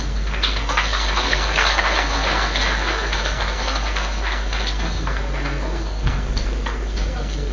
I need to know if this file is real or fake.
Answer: fake